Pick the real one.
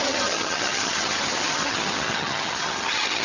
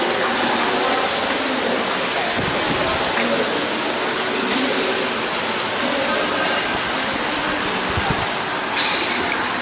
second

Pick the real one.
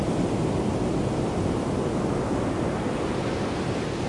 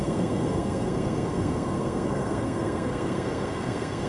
first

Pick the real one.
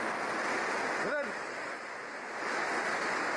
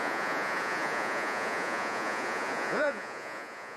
first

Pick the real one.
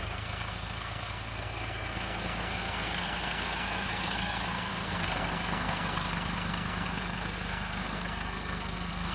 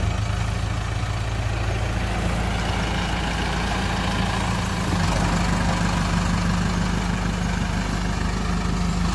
second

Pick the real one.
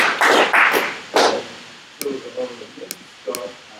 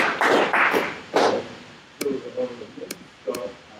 first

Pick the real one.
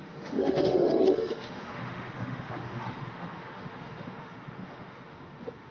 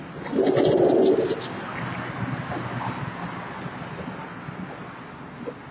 second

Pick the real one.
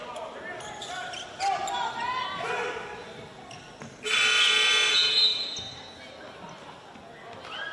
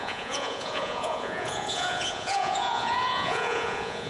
first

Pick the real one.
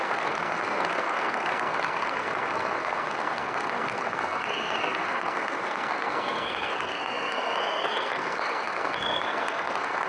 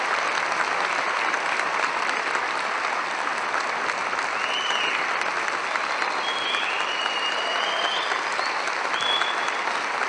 second